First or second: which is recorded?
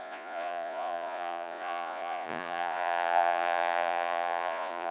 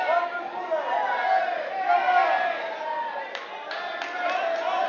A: second